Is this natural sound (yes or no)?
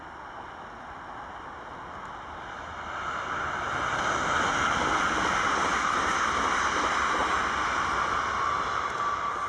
yes